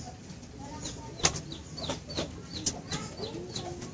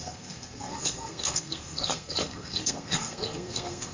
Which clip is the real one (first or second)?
first